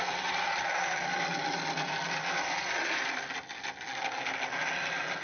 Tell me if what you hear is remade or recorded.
recorded